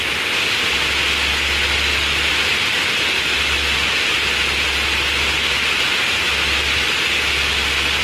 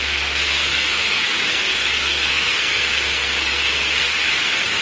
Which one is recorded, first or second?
first